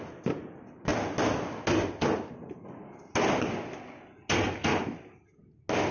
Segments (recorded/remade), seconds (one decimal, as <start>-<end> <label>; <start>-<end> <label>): 0.0-5.9 recorded